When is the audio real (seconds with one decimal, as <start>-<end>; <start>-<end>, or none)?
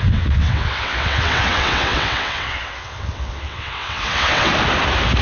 4.5-5.2